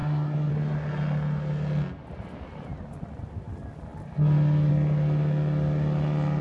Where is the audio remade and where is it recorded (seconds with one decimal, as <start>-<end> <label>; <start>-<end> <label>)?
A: 0.0-0.5 remade; 0.5-6.4 recorded